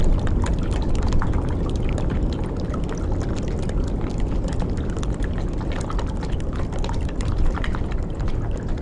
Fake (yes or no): no